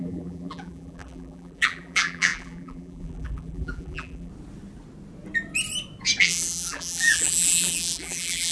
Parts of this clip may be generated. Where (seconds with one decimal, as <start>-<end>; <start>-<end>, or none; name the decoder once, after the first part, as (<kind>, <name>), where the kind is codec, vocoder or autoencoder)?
0.0-4.3 (vocoder, BigVGAN v2); 6.2-8.5